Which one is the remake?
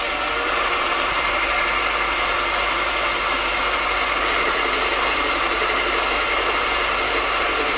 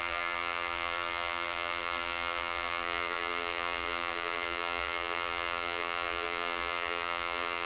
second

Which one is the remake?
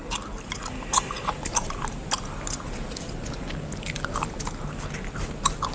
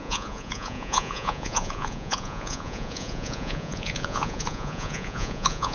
second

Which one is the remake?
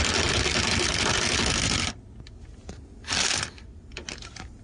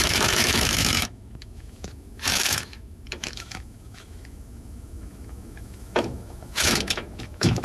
second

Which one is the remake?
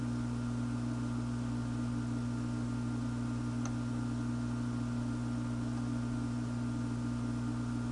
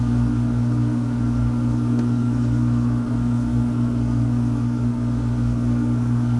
second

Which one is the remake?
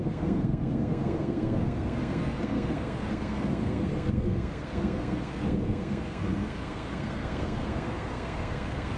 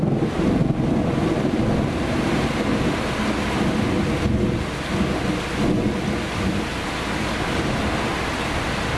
first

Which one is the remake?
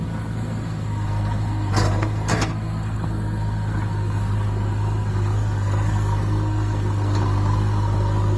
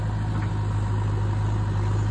first